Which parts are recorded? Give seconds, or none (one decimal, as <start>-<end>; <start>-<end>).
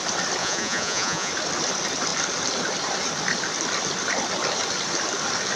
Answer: 0.0-0.4; 1.3-5.6